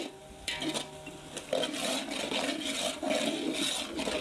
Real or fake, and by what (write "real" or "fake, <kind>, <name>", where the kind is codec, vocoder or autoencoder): real